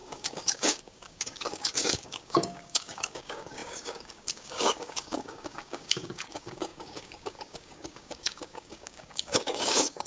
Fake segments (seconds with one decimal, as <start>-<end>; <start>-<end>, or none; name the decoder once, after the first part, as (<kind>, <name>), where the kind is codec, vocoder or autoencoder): 0.0-10.1 (codec, DAC)